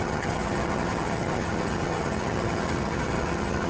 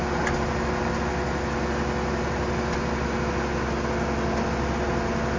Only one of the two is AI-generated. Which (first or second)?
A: first